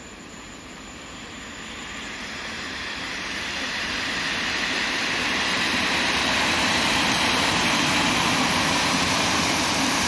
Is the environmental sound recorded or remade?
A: remade